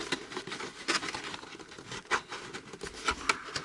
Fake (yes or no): no